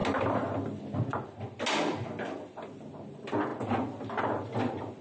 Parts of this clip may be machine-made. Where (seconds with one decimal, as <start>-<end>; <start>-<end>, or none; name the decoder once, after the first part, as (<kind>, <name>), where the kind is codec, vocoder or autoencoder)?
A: none